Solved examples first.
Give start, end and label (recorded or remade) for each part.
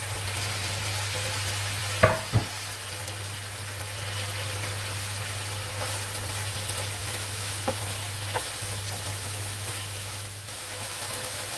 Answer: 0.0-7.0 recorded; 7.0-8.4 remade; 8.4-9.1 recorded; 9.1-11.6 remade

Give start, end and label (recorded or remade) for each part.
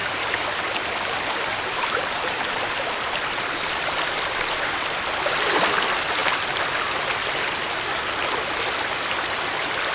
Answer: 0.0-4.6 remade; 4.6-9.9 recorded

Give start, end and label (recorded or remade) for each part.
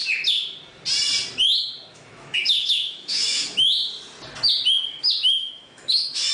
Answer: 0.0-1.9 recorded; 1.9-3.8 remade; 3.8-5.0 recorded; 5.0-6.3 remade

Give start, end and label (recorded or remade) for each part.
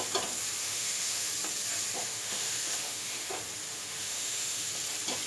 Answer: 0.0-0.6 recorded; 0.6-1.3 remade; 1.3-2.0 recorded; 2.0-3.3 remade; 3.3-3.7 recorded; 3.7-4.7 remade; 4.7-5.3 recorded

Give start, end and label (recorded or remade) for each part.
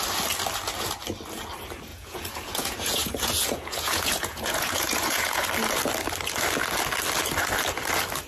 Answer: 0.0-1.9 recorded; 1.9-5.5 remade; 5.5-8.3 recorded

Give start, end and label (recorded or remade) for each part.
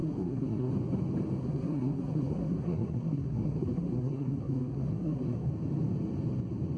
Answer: 0.0-0.7 remade; 0.7-1.4 recorded; 1.4-5.5 remade; 5.5-6.8 recorded